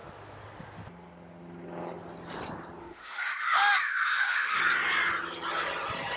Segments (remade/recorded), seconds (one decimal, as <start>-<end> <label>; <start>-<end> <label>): 0.0-2.8 recorded; 2.8-4.6 remade; 4.6-6.2 recorded